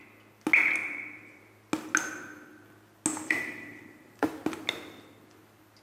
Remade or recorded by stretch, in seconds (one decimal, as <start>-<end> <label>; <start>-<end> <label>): 0.0-0.8 recorded; 0.8-1.4 remade; 1.4-3.1 recorded; 3.1-4.3 remade; 4.3-5.8 recorded